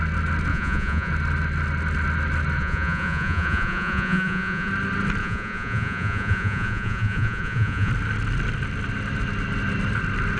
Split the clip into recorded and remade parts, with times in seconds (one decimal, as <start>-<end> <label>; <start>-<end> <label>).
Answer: 0.0-0.5 recorded; 0.5-1.1 remade; 1.1-2.6 recorded; 2.6-4.7 remade; 4.7-5.2 recorded; 5.2-7.9 remade; 7.9-10.4 recorded